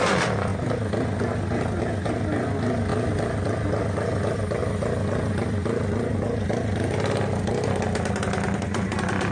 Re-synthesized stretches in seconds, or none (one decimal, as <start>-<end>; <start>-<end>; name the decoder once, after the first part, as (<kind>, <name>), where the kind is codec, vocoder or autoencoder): none